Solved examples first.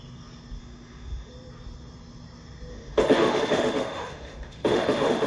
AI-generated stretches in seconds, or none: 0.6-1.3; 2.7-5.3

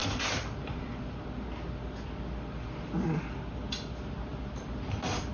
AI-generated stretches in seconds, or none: 0.0-0.8; 4.3-5.3

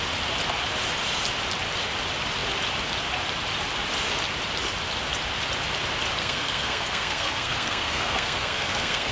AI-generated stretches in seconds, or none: 6.2-9.1

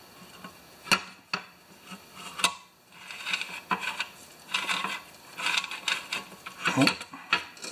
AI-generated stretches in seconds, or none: none

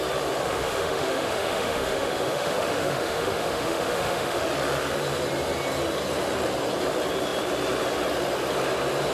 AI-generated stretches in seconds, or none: 0.4-4.5

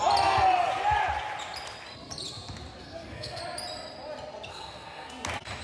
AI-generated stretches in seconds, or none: 2.8-3.4; 4.5-5.1

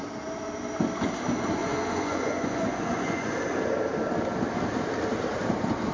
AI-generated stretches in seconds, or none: 1.6-3.3